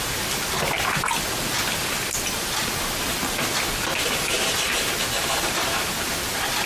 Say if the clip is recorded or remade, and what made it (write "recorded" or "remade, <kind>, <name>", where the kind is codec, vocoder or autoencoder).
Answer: recorded